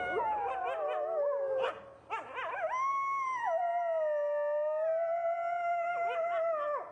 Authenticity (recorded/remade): recorded